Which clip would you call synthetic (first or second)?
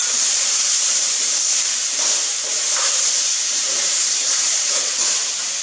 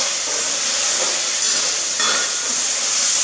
first